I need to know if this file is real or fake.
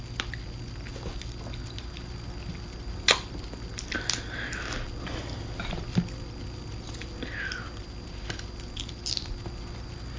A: real